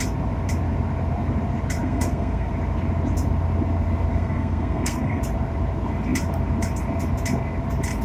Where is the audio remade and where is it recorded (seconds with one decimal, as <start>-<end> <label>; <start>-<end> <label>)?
0.0-1.8 recorded; 1.8-2.5 remade; 2.5-4.1 recorded; 4.1-5.2 remade; 5.2-8.0 recorded